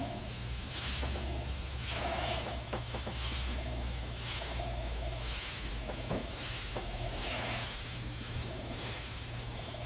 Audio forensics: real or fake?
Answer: fake